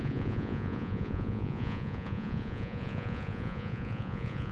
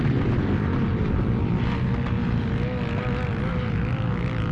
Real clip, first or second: second